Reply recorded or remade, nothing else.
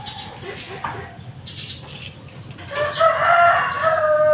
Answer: recorded